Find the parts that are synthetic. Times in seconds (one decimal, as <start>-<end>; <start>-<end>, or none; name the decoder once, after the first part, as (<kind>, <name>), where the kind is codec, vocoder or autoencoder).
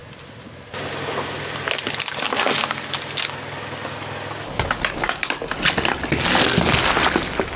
none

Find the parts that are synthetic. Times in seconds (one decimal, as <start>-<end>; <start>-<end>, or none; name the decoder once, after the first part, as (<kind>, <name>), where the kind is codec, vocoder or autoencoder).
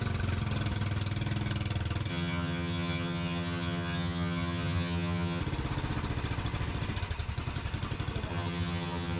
2.1-5.4 (vocoder, HiFi-GAN); 8.3-9.2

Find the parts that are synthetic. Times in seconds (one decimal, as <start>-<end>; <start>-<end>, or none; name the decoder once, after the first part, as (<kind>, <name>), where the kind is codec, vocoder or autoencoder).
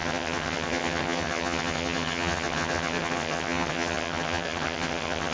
0.0-5.3 (vocoder, HiFi-GAN)